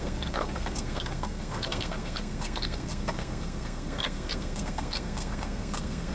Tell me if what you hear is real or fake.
fake